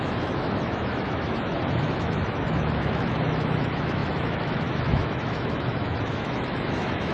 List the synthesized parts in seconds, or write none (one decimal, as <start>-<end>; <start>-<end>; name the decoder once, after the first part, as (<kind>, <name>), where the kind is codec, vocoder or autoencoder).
0.0-7.1 (autoencoder, DAC-VAE)